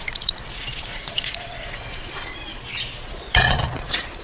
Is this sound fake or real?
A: fake